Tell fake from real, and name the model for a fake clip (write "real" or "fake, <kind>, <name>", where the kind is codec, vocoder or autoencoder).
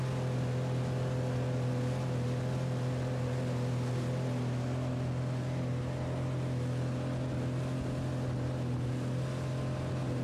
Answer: real